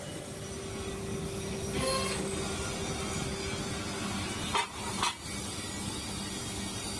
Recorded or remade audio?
recorded